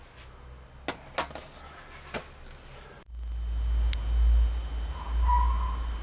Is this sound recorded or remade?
recorded